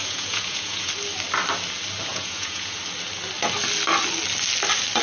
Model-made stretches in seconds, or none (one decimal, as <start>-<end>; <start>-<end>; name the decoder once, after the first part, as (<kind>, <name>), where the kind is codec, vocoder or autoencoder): 0.0-0.9 (vocoder, Vocos); 2.1-2.8